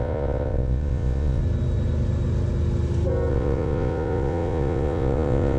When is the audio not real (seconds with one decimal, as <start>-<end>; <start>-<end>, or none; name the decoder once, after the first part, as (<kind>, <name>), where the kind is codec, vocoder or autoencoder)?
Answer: 0.0-1.4 (vocoder, Vocos); 3.3-5.6